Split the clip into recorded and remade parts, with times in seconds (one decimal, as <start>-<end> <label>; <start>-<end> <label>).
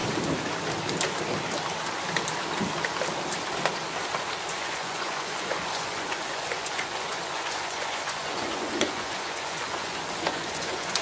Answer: 0.0-4.5 recorded; 4.5-11.0 remade